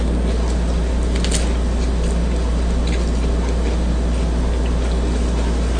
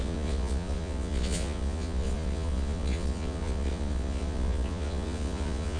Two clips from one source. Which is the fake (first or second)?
second